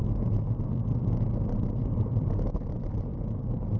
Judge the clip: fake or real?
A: real